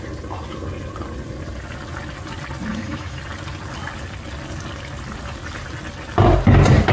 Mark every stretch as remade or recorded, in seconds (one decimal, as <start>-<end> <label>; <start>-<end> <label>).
0.0-2.7 recorded; 2.7-3.2 remade; 3.2-6.9 recorded